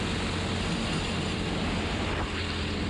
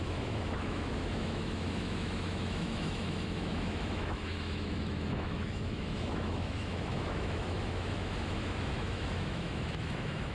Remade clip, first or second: second